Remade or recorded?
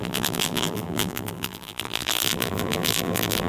remade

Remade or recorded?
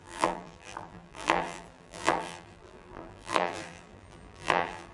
remade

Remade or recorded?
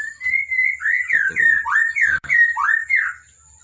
remade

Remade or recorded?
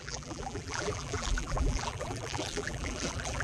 remade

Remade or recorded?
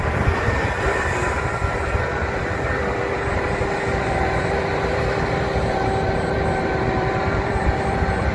remade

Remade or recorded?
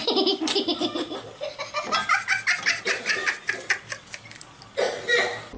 recorded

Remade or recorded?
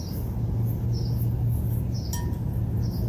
recorded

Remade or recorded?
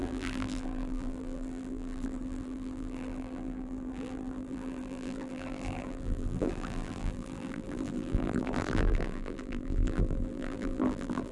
remade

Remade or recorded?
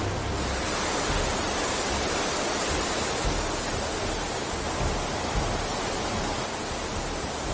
recorded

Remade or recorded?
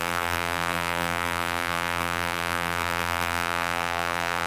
remade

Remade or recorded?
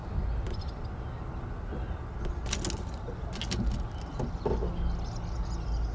recorded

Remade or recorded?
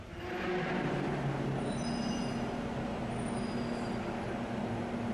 recorded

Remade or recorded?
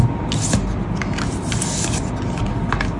recorded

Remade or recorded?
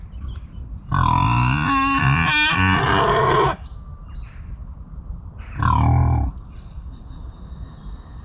recorded